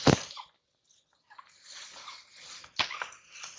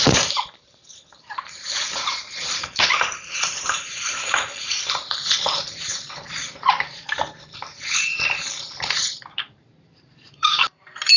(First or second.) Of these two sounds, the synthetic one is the second